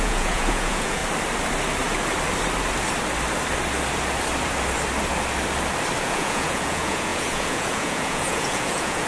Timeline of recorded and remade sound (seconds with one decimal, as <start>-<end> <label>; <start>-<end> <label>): 0.0-1.0 remade; 1.0-6.0 recorded; 6.0-9.1 remade